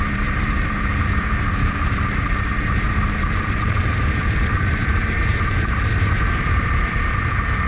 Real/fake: fake